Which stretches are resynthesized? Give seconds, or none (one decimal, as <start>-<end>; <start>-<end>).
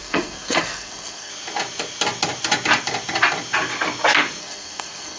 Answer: 0.0-1.3; 4.4-5.2